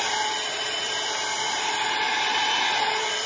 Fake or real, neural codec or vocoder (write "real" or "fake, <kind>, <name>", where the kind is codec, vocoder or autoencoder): fake, vocoder, BigVGAN v2